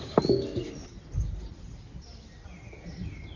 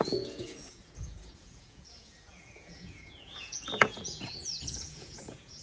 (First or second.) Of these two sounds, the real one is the first